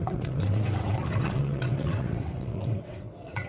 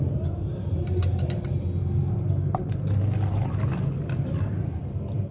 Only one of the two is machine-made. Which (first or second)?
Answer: first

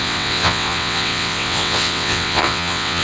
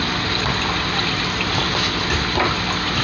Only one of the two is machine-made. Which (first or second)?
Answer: first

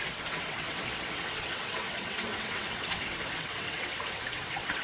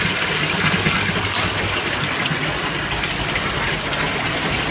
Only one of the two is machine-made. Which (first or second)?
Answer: first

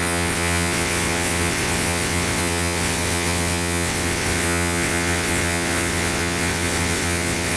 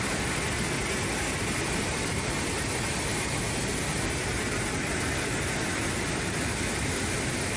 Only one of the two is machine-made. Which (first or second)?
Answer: first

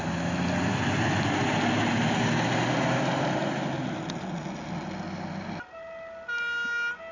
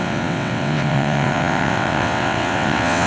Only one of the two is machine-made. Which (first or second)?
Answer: second